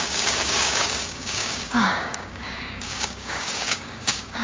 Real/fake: fake